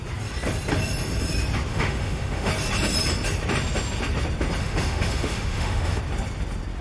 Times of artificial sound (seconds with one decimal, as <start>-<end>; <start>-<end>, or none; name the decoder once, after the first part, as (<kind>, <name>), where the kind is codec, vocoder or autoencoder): 1.7-2.5 (autoencoder, DAC-VAE); 4.6-6.0

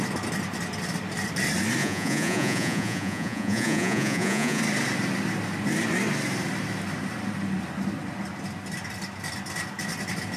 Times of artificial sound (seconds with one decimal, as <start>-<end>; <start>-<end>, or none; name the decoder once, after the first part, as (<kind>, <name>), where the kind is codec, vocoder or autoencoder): 1.8-4.6 (vocoder, Vocos)

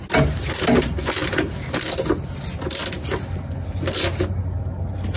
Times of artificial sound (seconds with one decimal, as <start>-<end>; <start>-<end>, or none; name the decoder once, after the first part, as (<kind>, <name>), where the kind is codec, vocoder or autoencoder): none

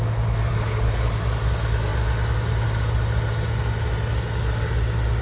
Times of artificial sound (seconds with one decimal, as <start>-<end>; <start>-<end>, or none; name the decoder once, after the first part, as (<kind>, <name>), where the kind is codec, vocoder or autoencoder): 0.5-1.2 (codec, HILCodec)

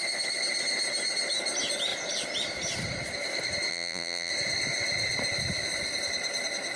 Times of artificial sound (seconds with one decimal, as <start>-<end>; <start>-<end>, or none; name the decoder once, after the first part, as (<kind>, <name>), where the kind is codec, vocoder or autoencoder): 3.7-4.3 (vocoder, BigVGAN v2)